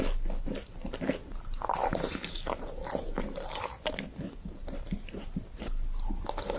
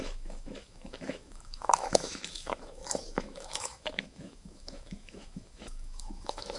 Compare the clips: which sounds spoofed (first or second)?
second